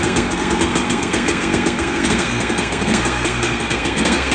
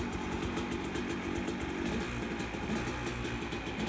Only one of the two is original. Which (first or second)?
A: second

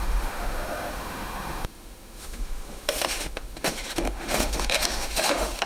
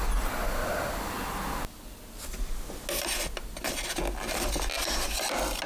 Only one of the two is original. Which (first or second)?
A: second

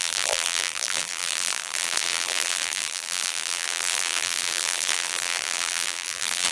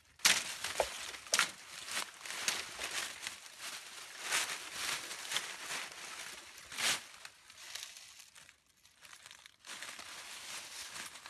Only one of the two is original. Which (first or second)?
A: second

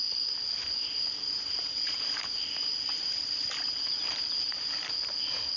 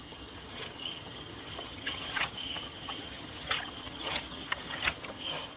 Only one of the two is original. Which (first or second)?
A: first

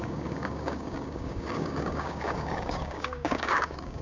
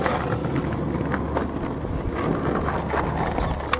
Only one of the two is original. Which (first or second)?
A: second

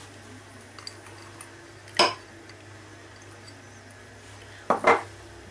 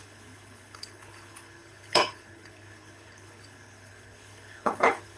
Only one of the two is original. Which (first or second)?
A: first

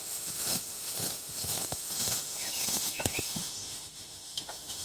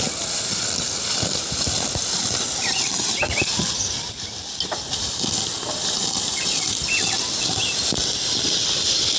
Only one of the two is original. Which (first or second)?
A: second